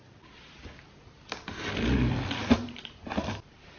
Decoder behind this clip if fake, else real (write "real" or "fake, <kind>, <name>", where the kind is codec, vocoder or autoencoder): real